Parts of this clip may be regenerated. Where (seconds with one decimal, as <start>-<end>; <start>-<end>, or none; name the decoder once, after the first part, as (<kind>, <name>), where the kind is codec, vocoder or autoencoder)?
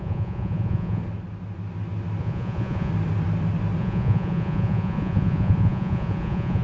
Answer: 0.0-1.0 (vocoder, Vocos); 2.2-2.9; 3.8-6.6